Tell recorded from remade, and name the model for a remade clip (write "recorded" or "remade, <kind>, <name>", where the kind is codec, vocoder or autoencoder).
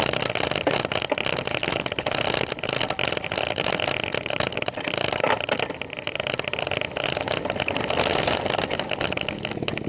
recorded